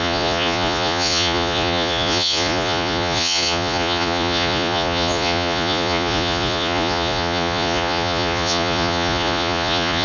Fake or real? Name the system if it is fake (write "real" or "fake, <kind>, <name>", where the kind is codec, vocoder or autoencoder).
fake, vocoder, Vocos